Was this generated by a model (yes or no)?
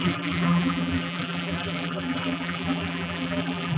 yes